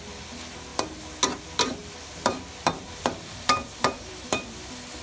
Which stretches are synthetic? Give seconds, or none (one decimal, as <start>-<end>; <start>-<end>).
1.8-5.0